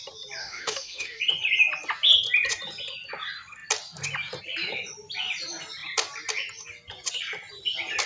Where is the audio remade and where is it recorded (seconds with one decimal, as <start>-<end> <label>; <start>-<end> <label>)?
0.0-0.4 recorded; 0.4-1.2 remade; 1.2-8.1 recorded